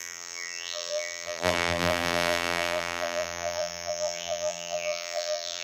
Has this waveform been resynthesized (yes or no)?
yes